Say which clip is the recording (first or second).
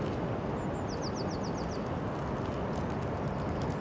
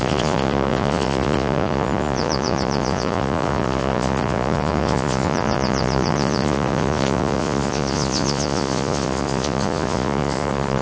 first